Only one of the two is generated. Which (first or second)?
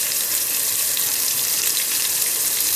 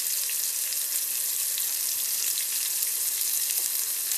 first